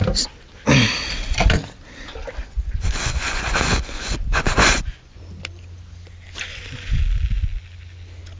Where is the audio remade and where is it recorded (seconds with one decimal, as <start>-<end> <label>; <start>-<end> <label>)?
0.0-2.4 recorded; 2.4-5.2 remade; 5.2-6.5 recorded; 6.5-7.0 remade; 7.0-8.4 recorded